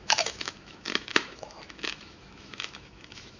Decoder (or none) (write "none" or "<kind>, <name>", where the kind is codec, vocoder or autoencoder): autoencoder, DAC-VAE